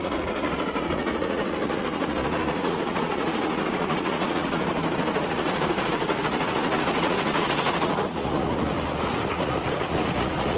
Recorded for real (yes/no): no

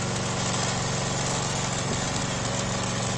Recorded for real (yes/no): yes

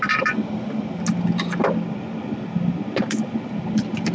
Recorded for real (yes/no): yes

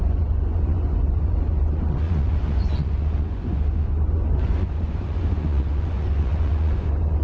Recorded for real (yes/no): no